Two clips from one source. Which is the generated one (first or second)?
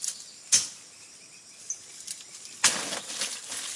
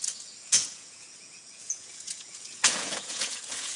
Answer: second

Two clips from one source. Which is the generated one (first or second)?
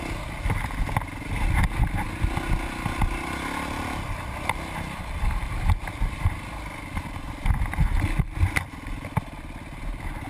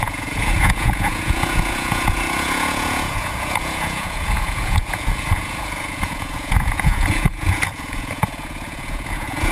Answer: second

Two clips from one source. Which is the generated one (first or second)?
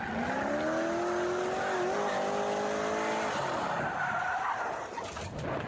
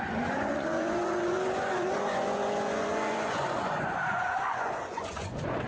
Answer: second